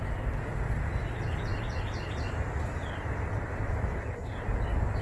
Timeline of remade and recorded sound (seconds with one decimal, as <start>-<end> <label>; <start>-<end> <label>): 0.0-2.8 recorded; 2.8-3.7 remade; 3.7-5.0 recorded